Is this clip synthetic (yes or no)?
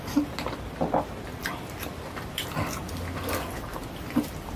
yes